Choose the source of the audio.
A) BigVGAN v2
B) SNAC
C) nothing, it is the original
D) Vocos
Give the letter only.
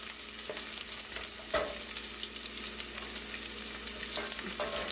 C